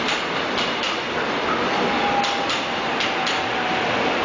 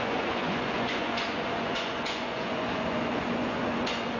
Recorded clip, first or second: first